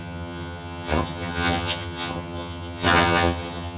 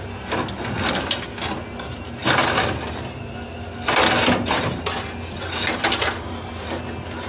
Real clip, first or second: second